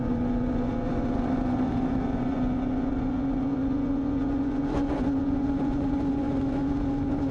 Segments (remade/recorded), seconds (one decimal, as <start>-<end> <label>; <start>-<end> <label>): 0.0-7.3 remade